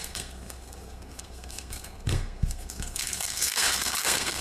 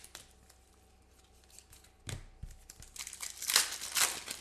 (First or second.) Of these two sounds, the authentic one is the second